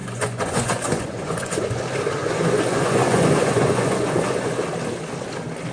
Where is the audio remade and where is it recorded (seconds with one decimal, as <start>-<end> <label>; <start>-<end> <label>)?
0.0-1.8 remade; 1.8-2.2 recorded; 2.2-4.6 remade; 4.6-5.7 recorded